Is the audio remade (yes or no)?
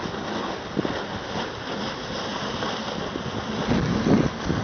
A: no